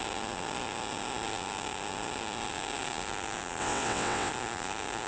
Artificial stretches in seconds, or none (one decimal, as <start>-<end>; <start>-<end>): 3.6-4.3

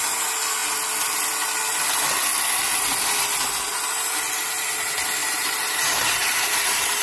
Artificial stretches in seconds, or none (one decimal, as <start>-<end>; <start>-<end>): 5.2-7.0

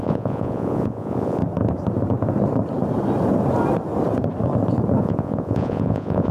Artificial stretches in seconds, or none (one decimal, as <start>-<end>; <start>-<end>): 0.0-1.4; 5.0-6.3

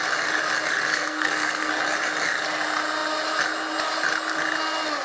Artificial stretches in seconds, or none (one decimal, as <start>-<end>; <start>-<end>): 0.9-1.7

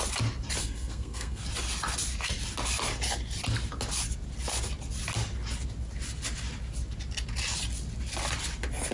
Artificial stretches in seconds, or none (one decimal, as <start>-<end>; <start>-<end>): 0.6-1.4

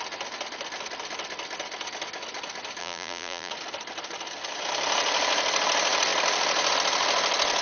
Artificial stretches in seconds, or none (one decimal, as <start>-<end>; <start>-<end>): 2.8-3.5

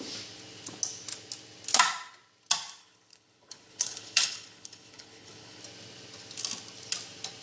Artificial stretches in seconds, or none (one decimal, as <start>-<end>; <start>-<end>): 2.8-5.6

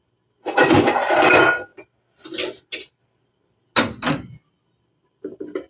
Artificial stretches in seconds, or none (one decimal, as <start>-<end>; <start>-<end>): none